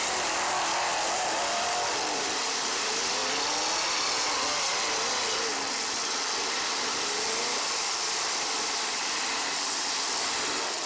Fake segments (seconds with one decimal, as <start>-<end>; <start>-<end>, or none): 0.0-3.2; 6.5-10.9